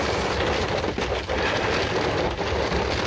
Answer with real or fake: real